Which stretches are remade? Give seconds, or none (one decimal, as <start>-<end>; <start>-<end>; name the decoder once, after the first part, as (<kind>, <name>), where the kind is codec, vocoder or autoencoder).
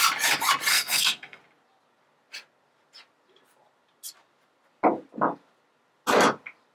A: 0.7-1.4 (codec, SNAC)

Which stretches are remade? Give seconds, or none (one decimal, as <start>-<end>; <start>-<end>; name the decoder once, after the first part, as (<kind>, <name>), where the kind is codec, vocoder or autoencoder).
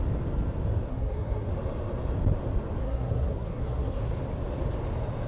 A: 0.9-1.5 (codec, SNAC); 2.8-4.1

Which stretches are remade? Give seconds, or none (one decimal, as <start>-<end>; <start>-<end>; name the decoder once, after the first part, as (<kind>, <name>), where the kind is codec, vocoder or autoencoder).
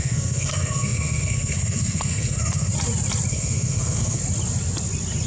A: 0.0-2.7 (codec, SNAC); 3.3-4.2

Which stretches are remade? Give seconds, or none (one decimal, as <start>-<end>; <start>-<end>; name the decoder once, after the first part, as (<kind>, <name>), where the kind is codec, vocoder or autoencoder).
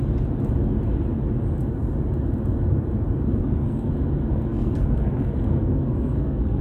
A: 3.4-3.9 (codec, SNAC); 4.3-6.6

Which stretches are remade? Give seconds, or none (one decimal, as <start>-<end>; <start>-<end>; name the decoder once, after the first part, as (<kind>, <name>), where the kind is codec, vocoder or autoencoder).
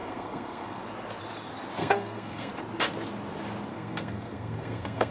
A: 0.0-0.8 (codec, SNAC); 1.8-2.5; 3.7-5.1